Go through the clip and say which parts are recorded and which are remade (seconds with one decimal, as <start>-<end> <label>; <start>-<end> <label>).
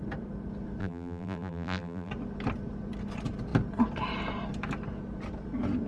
0.0-0.8 recorded; 0.8-2.1 remade; 2.1-5.9 recorded